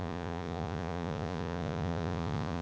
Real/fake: fake